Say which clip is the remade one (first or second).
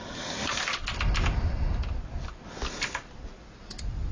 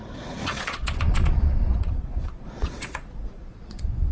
second